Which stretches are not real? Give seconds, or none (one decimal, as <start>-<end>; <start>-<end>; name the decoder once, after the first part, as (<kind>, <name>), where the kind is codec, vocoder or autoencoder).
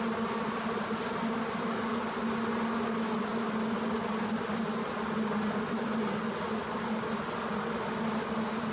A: none